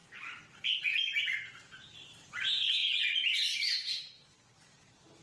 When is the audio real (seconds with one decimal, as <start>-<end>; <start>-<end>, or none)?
0.0-5.2